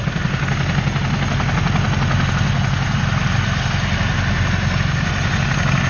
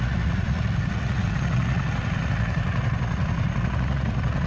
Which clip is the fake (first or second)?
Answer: second